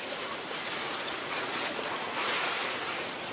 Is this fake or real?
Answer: fake